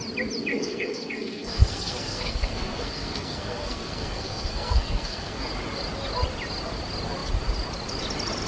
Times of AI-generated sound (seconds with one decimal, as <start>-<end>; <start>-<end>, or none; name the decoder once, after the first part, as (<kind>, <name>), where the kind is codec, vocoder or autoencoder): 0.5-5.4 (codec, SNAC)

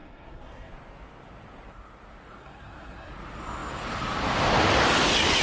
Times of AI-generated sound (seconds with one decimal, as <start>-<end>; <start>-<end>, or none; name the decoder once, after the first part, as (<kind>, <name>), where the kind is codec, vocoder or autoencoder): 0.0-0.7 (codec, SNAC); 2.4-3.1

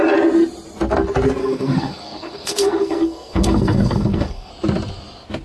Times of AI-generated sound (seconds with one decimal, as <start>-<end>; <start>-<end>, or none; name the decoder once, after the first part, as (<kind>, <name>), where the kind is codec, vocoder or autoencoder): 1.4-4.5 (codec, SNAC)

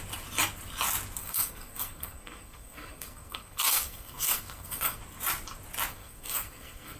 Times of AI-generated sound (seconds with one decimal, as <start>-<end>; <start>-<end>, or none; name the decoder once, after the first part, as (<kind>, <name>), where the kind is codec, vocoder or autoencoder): 1.2-5.0 (codec, SNAC); 5.9-7.0

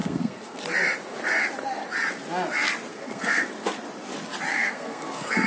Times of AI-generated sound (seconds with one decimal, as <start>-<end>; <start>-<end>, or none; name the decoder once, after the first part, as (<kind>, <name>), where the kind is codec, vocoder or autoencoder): 0.0-0.6 (codec, SNAC); 2.9-3.5; 4.5-5.5